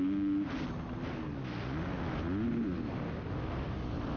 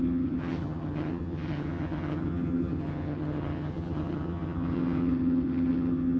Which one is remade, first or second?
second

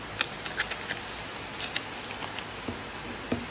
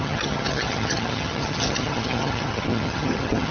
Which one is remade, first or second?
second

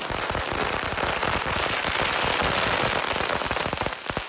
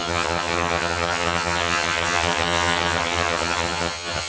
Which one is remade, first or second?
second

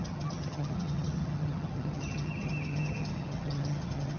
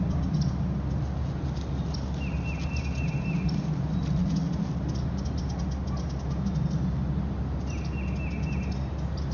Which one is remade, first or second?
first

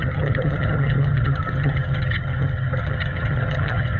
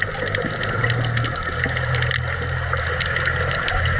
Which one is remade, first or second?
first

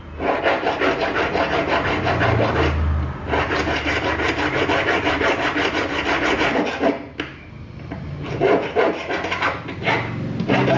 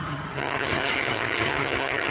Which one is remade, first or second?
second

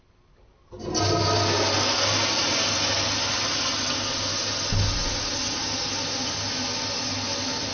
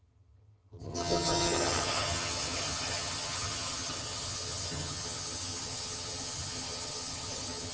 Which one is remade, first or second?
second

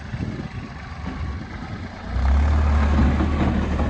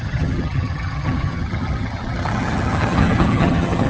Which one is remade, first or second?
second